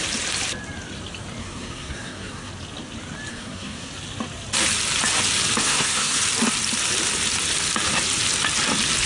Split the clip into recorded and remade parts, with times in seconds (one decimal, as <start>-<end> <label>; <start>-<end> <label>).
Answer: 0.0-1.4 recorded; 1.4-2.5 remade; 2.5-3.3 recorded; 3.3-3.9 remade; 3.9-5.6 recorded; 5.6-6.2 remade; 6.2-9.1 recorded